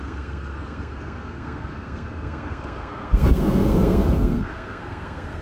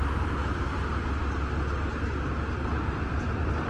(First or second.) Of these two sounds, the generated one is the first